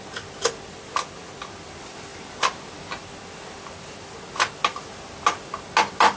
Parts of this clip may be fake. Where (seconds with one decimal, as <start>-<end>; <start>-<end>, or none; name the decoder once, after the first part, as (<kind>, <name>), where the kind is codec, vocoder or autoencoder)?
none

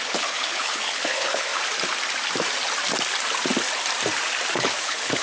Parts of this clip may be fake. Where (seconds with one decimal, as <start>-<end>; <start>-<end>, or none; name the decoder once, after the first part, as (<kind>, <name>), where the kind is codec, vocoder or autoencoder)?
0.0-1.5 (codec, HILCodec); 4.6-5.2

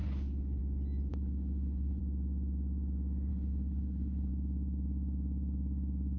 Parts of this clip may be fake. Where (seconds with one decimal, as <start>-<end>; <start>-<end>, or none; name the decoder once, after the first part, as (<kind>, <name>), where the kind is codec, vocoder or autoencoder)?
0.0-0.6 (codec, HILCodec); 1.1-2.0; 3.3-4.3

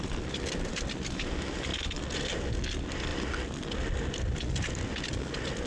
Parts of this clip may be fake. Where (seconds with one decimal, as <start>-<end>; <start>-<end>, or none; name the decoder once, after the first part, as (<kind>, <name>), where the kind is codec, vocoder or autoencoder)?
none